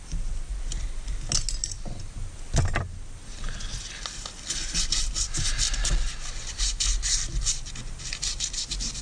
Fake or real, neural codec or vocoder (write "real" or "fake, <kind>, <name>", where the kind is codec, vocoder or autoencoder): real